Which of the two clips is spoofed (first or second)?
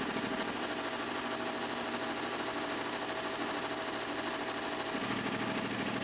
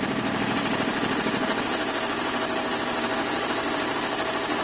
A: second